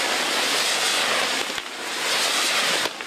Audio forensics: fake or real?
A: real